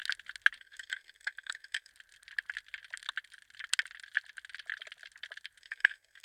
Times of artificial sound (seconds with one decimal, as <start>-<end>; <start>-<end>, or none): 0.6-1.9; 5.6-6.2

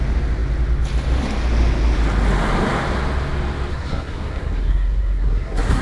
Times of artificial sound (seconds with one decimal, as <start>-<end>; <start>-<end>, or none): 3.7-5.8

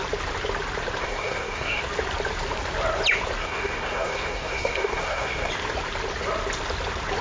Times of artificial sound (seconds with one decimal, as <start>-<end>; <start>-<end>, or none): 1.0-1.8; 3.4-5.5

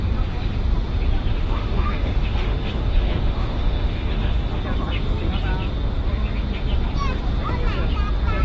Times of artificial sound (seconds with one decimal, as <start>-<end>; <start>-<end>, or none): 1.3-4.6

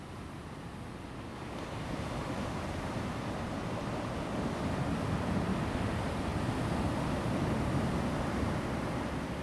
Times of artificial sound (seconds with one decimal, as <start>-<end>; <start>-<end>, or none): none

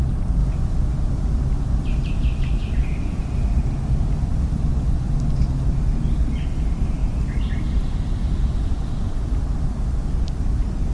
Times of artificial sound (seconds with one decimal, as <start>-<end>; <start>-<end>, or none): 2.6-3.2; 7.0-9.6